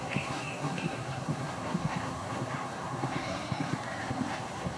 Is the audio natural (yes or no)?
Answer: no